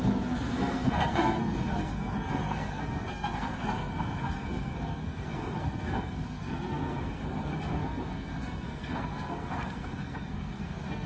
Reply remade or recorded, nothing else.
remade